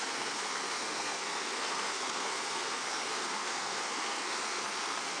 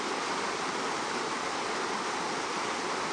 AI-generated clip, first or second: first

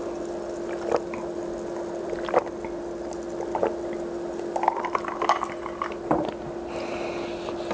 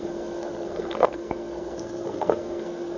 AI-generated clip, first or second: second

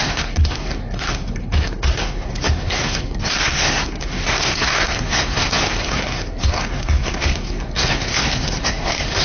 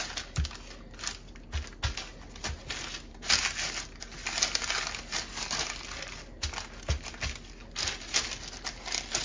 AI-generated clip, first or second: first